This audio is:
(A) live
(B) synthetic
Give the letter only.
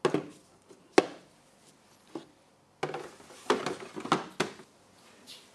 A